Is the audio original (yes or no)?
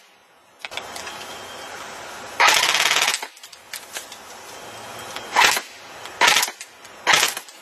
yes